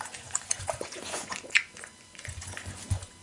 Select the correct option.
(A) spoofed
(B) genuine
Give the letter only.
A